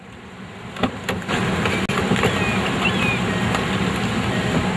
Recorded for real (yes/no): yes